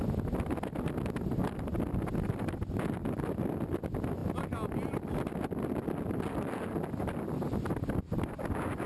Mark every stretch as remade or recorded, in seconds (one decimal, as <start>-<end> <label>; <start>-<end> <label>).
0.0-8.9 recorded